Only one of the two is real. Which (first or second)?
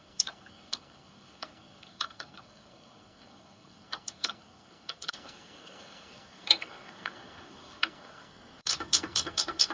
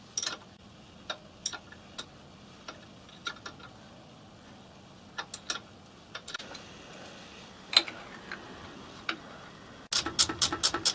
second